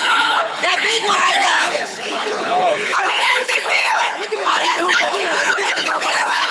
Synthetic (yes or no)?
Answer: yes